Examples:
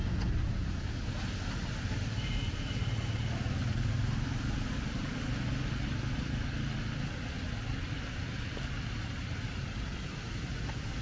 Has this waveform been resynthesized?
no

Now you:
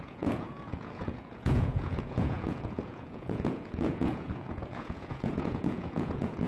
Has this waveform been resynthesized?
yes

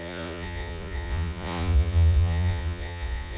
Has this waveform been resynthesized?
yes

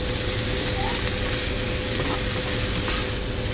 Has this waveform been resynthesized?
no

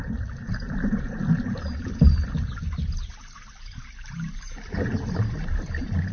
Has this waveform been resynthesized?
no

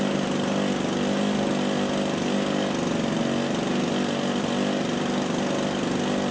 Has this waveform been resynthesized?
no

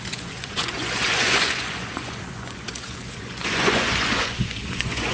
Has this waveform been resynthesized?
yes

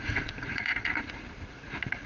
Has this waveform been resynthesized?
yes